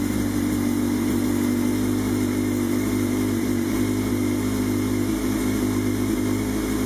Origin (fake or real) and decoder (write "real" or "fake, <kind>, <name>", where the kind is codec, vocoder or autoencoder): real